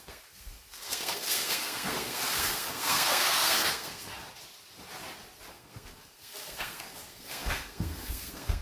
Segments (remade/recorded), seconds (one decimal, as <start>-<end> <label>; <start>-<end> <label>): 0.0-4.1 remade; 4.1-5.5 recorded; 5.5-8.6 remade